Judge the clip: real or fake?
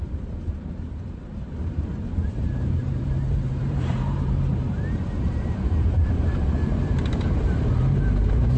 fake